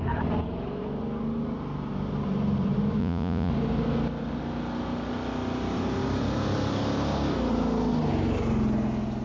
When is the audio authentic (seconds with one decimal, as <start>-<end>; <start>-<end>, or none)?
0.0-3.0; 3.5-9.2